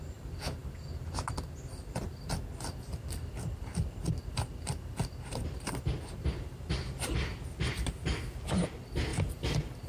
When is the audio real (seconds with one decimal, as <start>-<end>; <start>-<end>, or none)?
0.0-9.9